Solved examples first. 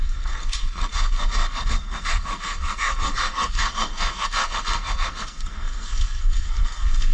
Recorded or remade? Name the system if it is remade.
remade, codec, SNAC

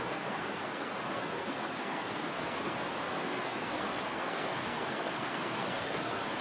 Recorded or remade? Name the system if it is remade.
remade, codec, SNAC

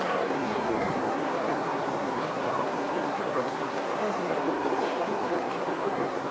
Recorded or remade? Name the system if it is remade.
remade, codec, SNAC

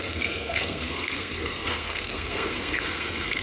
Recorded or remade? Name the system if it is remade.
remade, codec, SNAC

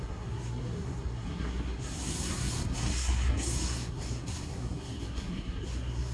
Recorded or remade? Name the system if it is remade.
remade, codec, SNAC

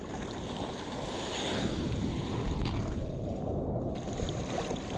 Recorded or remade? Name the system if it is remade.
recorded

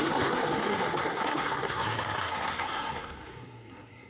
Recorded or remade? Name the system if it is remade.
remade, codec, SNAC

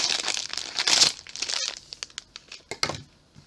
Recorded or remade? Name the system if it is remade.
recorded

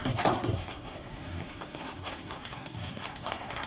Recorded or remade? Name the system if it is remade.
remade, codec, SNAC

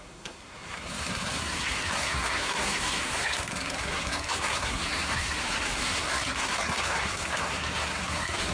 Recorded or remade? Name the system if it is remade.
remade, codec, SNAC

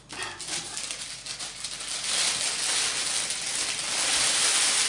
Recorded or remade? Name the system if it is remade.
recorded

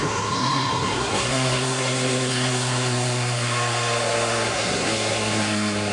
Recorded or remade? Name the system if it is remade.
remade, codec, SNAC